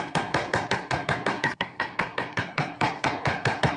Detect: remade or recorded remade